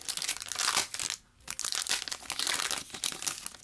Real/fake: real